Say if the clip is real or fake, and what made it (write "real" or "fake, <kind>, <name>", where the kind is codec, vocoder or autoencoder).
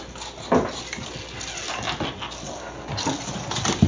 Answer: real